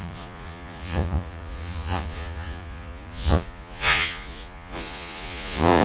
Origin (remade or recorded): remade